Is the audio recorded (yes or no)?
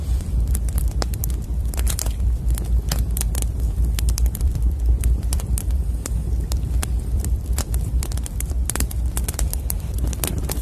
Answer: no